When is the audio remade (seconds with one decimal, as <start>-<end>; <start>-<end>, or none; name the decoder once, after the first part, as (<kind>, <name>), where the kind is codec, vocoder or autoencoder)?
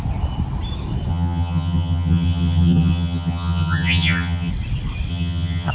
1.1-4.5 (vocoder, HiFi-GAN); 5.1-5.7